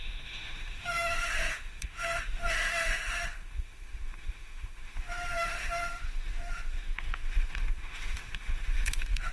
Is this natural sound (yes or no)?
no